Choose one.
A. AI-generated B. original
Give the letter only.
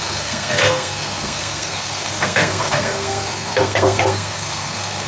A